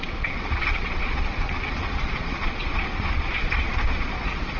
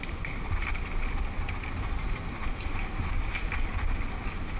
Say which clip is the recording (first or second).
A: second